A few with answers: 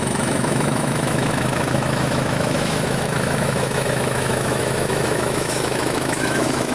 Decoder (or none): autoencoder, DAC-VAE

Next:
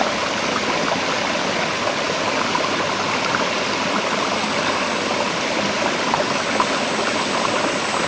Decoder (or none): none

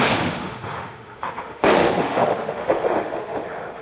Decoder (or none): autoencoder, DAC-VAE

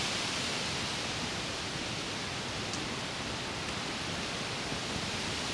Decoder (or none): none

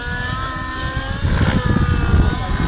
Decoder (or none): none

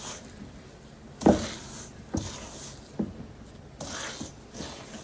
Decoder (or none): none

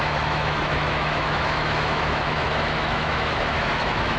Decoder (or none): autoencoder, DAC-VAE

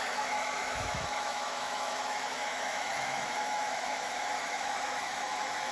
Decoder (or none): autoencoder, DAC-VAE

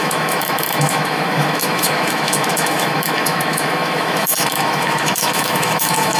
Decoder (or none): autoencoder, DAC-VAE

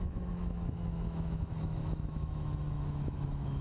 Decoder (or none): autoencoder, DAC-VAE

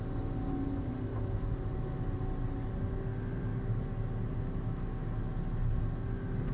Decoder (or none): none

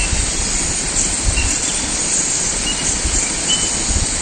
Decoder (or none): none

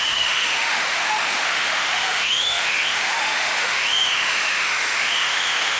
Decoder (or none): autoencoder, DAC-VAE